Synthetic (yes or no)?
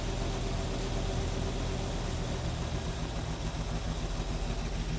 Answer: no